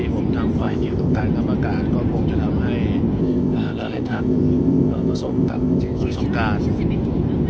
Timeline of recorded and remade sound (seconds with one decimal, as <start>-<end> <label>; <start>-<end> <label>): 0.0-0.6 recorded; 0.6-1.2 remade; 1.2-3.2 recorded; 3.2-6.2 remade; 6.2-7.5 recorded

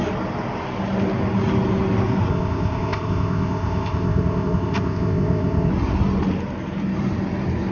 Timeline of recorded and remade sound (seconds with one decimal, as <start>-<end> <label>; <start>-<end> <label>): 0.0-2.3 recorded; 2.3-5.7 remade; 5.7-7.7 recorded

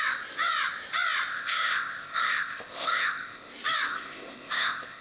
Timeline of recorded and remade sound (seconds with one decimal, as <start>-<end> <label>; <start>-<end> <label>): 0.0-1.3 recorded; 1.3-3.5 remade; 3.5-3.9 recorded; 3.9-5.0 remade

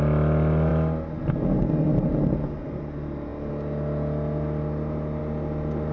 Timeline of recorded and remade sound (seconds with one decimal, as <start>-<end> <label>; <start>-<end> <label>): 0.0-5.9 recorded

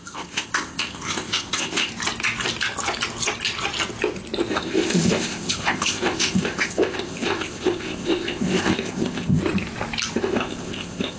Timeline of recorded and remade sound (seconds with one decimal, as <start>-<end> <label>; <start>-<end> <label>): 0.0-1.9 remade; 1.9-4.5 recorded; 4.5-9.4 remade; 9.4-10.1 recorded; 10.1-11.2 remade

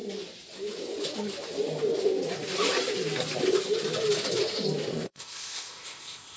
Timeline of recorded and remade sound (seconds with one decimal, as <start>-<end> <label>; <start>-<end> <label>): 0.0-4.9 recorded; 4.9-6.4 remade

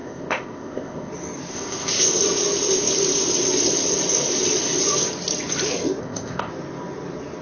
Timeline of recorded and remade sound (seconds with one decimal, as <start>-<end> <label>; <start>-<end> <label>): 0.0-1.1 remade; 1.1-1.5 recorded; 1.5-2.2 remade; 2.2-6.0 recorded; 6.0-6.5 remade; 6.5-7.4 recorded